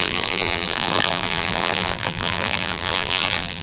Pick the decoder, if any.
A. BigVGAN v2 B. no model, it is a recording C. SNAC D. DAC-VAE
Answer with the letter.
A